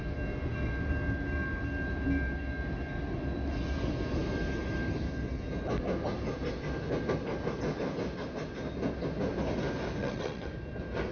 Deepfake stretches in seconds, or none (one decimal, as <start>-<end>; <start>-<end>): 10.0-10.5